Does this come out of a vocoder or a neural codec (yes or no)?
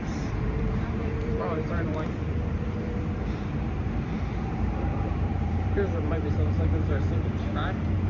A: yes